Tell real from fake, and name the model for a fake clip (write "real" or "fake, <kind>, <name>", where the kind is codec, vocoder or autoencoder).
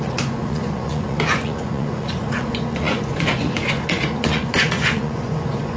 fake, vocoder, Vocos